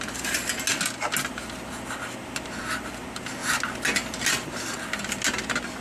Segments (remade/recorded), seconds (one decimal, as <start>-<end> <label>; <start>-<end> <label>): 0.0-5.8 recorded